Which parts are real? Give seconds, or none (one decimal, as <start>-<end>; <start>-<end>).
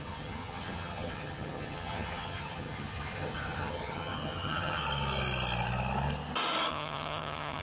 4.8-6.7